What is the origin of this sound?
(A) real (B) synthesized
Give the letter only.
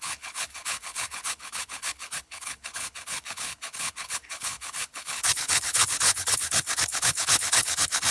B